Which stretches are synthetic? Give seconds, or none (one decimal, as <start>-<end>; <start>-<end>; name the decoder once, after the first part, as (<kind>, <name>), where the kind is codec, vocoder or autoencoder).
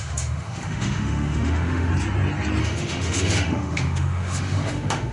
0.0-1.9 (autoencoder, DAC-VAE); 2.6-5.1